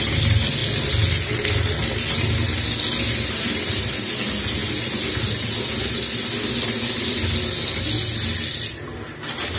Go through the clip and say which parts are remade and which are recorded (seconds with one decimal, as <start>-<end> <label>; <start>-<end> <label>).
0.0-9.6 recorded